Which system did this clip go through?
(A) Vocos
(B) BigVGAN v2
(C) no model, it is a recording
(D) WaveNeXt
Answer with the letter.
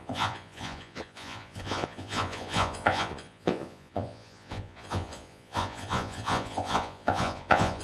A